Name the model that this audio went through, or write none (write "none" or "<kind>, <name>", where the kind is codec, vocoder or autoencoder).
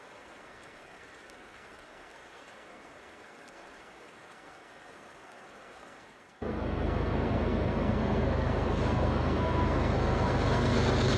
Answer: codec, SNAC